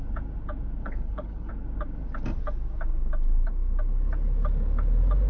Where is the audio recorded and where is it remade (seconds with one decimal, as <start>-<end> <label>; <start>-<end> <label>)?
0.0-0.8 recorded; 0.8-1.5 remade; 1.5-5.3 recorded